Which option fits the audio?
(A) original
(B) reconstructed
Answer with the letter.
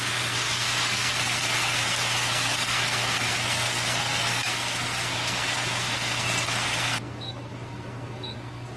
B